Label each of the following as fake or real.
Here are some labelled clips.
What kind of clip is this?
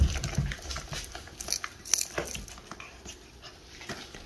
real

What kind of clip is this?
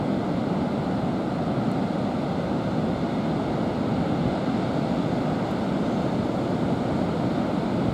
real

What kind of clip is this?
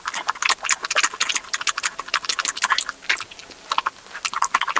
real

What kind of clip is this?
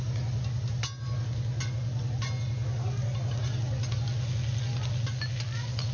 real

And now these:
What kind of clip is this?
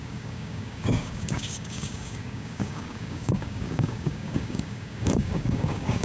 fake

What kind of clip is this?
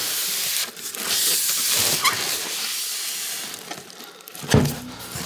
real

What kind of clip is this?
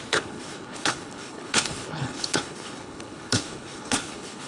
fake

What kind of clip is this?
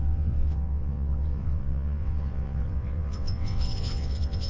fake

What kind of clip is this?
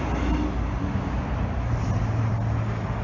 real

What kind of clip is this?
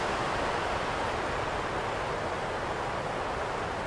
real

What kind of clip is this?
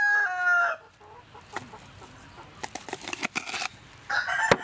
real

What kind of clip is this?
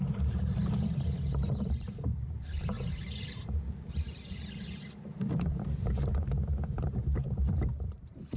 fake